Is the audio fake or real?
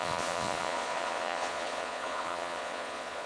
fake